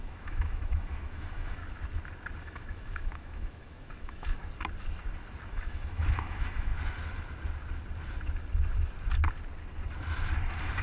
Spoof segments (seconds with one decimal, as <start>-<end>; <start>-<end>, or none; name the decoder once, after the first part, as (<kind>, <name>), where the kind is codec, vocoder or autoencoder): 0.0-1.6 (autoencoder, DAC-VAE); 2.4-4.4; 5.5-6.7